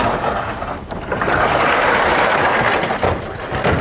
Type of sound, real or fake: real